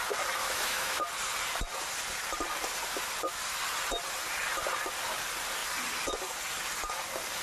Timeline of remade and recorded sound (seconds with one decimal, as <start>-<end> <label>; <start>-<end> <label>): 0.0-0.4 recorded; 0.4-1.0 remade; 1.0-7.4 recorded